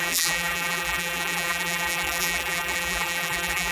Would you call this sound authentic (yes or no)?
no